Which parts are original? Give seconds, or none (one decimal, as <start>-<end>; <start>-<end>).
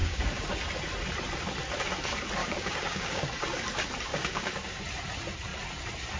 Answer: 0.5-2.4; 3.2-4.1; 4.8-6.2